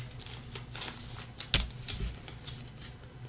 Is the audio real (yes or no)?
yes